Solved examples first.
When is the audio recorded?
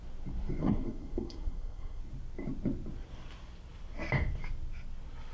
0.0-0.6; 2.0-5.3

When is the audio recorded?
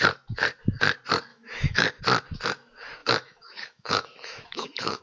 0.0-1.3; 2.0-3.0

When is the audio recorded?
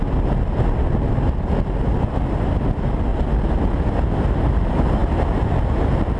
0.0-6.2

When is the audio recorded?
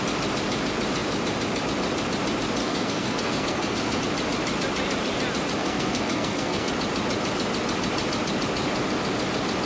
0.0-2.6; 4.0-5.6; 6.7-9.7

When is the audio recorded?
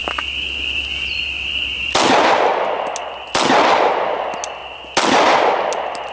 0.0-6.1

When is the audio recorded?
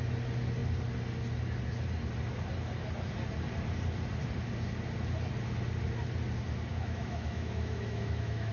0.0-6.7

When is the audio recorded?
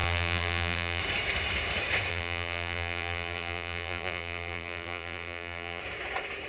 1.0-2.1; 5.8-6.5